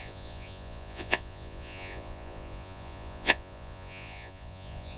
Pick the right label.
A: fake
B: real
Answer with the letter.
A